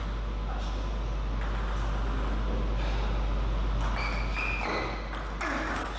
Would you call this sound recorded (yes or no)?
yes